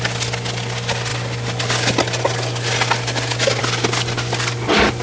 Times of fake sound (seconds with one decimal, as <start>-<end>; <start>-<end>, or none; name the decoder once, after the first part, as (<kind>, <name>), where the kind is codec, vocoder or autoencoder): none